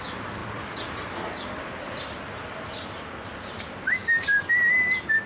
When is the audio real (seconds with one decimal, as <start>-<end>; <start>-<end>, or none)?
0.0-5.3